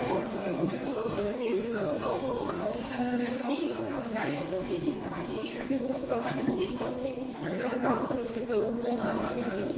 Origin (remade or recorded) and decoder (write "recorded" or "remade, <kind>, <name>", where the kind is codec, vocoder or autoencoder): remade, codec, SNAC